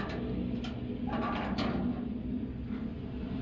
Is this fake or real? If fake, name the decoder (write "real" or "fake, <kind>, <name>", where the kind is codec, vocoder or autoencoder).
real